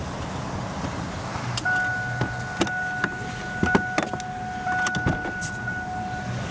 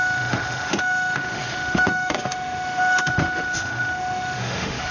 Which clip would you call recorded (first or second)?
first